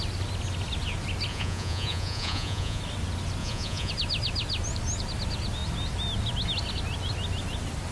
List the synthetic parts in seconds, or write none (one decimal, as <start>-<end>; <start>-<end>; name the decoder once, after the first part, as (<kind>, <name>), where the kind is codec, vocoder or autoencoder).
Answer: 1.3-2.8 (vocoder, Vocos); 3.4-3.9